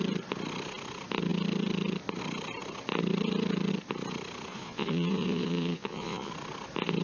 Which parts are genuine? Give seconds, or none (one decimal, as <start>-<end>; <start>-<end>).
0.0-4.5; 6.3-7.0